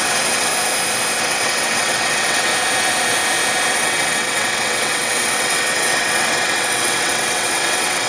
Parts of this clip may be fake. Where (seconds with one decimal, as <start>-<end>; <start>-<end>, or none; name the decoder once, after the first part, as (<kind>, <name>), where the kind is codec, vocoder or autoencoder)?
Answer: 0.0-0.5 (vocoder, WaveNeXt); 1.2-2.5; 3.7-8.1